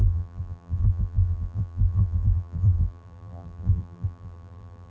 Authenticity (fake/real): fake